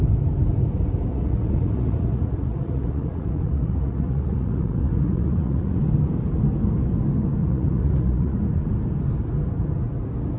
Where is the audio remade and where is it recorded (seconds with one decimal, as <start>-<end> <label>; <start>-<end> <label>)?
0.0-1.1 recorded; 1.1-5.8 remade; 5.8-7.4 recorded; 7.4-8.4 remade; 8.4-10.4 recorded